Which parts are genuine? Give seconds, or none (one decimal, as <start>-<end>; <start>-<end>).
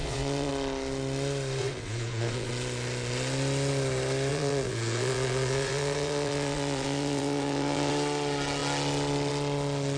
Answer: 0.5-1.6; 2.5-4.3; 7.9-10.0